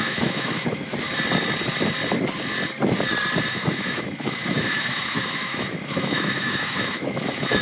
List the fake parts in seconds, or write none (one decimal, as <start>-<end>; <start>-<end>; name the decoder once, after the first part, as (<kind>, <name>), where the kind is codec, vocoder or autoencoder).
0.0-0.9 (autoencoder, DAC-VAE); 3.5-7.6